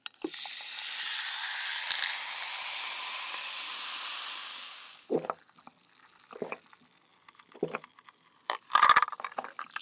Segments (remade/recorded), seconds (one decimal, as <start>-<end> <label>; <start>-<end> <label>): 0.0-4.5 recorded; 4.5-5.1 remade; 5.1-9.8 recorded